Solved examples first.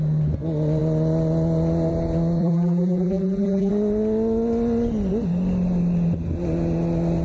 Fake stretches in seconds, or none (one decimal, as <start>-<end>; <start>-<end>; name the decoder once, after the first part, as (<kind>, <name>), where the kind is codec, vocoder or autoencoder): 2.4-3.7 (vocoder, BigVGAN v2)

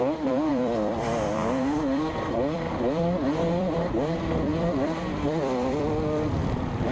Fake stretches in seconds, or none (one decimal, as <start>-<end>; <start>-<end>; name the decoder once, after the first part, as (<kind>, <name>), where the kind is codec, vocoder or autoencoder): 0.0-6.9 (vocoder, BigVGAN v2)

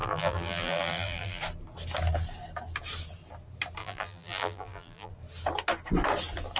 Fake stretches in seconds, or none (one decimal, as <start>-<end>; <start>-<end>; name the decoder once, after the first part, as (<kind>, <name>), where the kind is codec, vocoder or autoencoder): 0.0-1.4 (vocoder, BigVGAN v2); 3.8-5.1